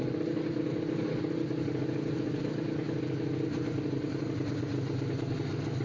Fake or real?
real